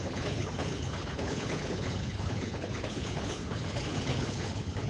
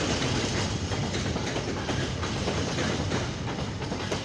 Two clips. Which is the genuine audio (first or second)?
second